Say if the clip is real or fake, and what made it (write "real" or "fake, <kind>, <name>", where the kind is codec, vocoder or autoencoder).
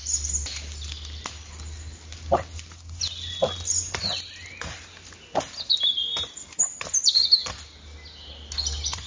real